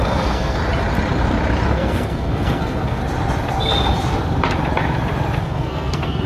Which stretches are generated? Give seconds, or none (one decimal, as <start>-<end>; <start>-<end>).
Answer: 0.0-0.6; 1.7-3.0; 5.4-6.3

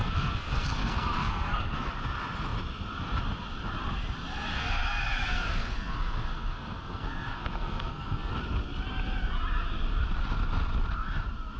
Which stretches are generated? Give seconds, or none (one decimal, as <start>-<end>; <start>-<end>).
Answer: 0.0-1.9; 4.5-8.3

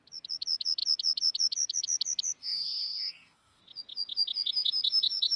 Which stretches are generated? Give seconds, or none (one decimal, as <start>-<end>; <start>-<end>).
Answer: 2.4-3.6

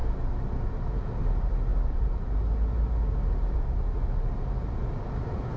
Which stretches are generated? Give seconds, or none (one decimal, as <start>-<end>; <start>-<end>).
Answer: none

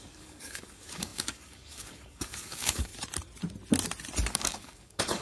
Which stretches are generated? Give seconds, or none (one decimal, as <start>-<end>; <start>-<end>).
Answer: 0.0-2.9; 4.3-5.2

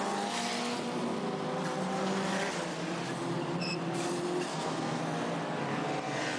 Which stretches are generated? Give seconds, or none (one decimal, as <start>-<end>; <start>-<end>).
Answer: 4.5-5.0

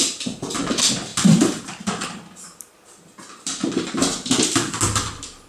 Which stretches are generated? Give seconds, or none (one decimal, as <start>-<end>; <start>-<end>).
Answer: 1.1-3.8